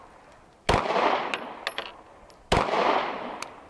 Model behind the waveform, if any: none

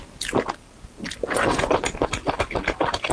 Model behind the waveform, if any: none